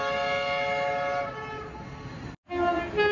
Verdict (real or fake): real